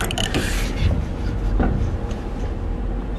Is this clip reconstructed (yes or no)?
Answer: no